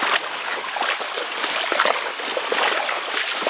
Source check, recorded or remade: recorded